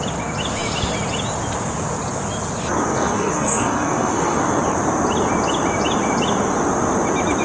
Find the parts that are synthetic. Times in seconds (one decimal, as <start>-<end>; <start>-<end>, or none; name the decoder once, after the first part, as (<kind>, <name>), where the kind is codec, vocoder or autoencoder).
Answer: 2.9-4.6 (codec, SNAC)